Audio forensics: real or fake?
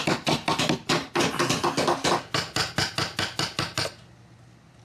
real